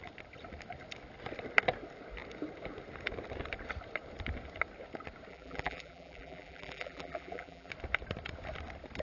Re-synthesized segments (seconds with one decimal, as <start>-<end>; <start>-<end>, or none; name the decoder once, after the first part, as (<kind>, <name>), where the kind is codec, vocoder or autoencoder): 5.3-7.7 (vocoder, BigVGAN v2)

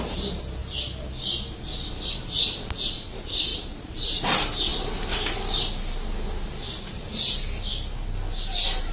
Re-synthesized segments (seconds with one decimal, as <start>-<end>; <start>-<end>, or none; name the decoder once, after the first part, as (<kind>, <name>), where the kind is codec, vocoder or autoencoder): 3.5-4.2 (vocoder, BigVGAN v2)

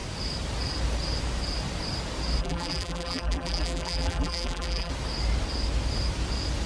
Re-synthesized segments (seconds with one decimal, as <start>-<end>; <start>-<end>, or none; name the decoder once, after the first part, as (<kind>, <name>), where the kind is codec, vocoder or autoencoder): 2.4-4.9 (vocoder, BigVGAN v2)

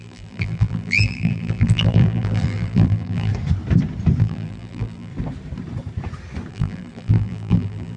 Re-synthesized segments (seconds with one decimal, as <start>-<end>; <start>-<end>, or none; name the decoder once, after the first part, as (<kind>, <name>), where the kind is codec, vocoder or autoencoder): 0.0-3.3 (vocoder, BigVGAN v2); 4.2-5.1; 6.5-8.0

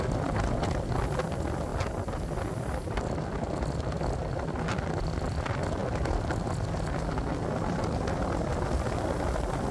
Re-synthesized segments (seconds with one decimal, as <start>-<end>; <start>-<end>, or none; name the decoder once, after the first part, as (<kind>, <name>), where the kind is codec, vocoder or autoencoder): none

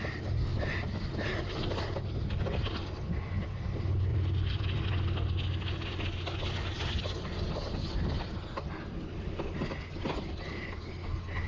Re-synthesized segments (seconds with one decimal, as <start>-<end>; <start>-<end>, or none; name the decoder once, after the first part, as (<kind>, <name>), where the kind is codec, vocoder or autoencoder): 4.1-4.9 (vocoder, BigVGAN v2)